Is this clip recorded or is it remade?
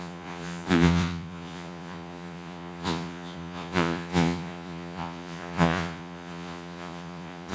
remade